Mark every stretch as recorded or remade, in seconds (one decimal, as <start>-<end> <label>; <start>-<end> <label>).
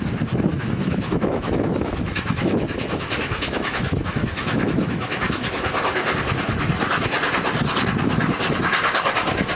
0.0-0.5 recorded; 0.5-5.7 remade; 5.7-9.6 recorded